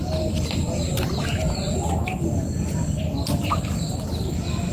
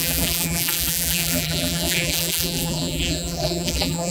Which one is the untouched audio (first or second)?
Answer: first